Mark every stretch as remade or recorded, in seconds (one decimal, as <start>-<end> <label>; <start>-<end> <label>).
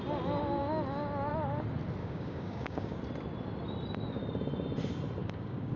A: 0.0-2.0 recorded; 2.0-3.0 remade; 3.0-5.2 recorded; 5.2-5.8 remade